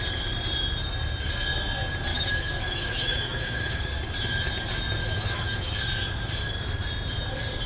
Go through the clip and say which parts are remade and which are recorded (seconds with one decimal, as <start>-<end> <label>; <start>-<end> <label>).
0.0-2.1 recorded; 2.1-3.8 remade; 3.8-5.0 recorded; 5.0-5.7 remade; 5.7-7.7 recorded